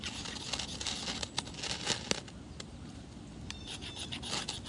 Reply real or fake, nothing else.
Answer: real